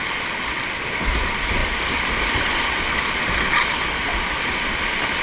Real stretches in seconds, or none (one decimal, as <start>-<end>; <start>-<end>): 0.0-5.2